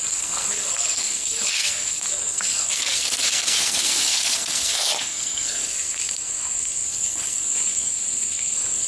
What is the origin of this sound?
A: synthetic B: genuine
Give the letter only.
A